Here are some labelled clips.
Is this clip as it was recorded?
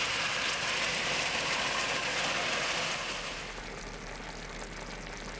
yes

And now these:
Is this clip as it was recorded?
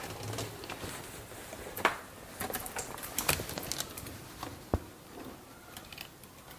yes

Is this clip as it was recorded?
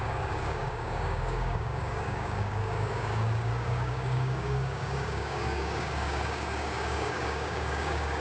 no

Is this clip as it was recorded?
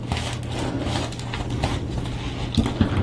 yes